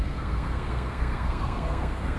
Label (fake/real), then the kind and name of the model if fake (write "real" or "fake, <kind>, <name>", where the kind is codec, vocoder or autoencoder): fake, codec, SNAC